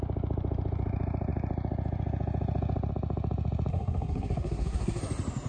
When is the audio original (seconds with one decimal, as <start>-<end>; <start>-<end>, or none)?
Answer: 0.0-3.7; 5.0-5.5